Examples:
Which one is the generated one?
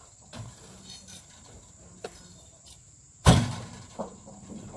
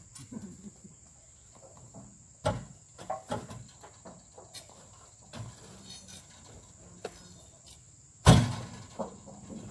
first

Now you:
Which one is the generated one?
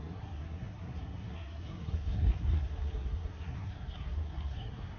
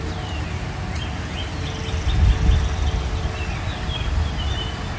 first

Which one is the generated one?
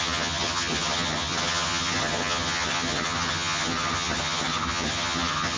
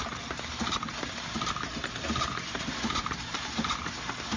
first